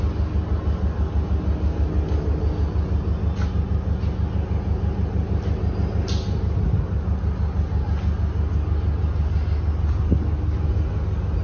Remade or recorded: recorded